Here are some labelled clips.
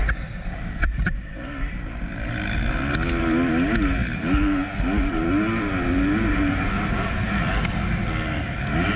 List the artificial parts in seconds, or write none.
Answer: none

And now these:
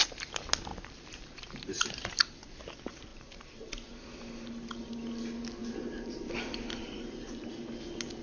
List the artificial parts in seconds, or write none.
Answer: 0.7-2.1 (vocoder, BigVGAN v2); 3.1-3.7; 5.6-6.3; 6.8-7.4

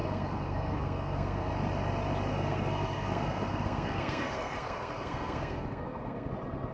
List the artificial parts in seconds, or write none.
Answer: 0.0-1.5 (codec, SNAC); 2.3-6.3

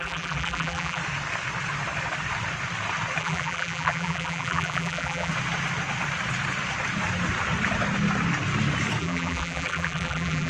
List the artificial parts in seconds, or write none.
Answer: 0.0-1.0 (vocoder, BigVGAN v2); 3.2-5.3; 9.0-10.5

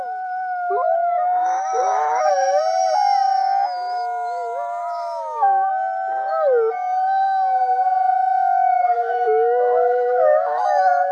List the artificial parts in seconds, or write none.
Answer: 1.4-2.6 (autoencoder, DAC-VAE); 4.8-5.7; 8.1-11.1

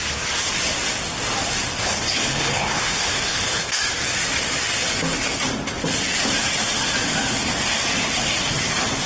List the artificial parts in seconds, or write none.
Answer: 1.8-3.8 (codec, HILCodec)

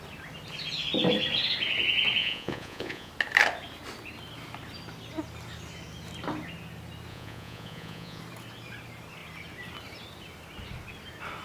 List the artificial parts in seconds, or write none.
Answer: 2.2-3.1 (vocoder, Vocos); 7.1-8.2